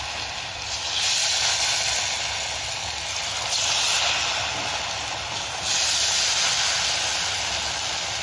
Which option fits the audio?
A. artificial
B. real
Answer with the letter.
B